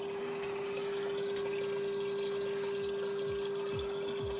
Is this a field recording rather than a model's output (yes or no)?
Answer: yes